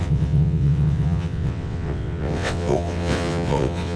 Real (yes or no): no